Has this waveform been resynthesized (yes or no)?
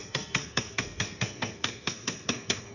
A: yes